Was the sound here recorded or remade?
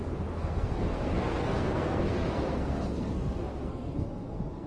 remade